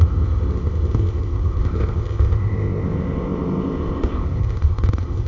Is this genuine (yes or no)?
no